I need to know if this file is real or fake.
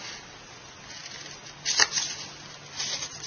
real